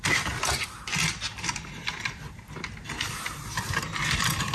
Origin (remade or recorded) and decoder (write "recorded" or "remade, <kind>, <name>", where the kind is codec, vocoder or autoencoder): recorded